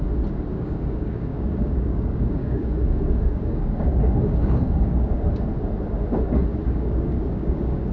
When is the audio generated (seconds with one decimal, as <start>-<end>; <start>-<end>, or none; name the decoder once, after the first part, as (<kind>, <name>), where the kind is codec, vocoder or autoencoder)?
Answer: 0.5-5.2 (codec, DAC); 6.5-7.9